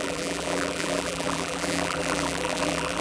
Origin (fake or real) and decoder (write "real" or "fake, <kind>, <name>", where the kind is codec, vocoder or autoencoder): fake, vocoder, BigVGAN v2